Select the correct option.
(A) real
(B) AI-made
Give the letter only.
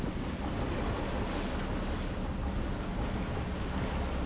A